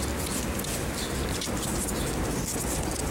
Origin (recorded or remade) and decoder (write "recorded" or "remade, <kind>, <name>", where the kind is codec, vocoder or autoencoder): recorded